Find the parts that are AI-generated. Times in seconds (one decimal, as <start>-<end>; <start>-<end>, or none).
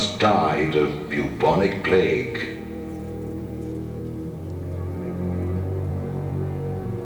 1.2-4.0; 5.9-7.0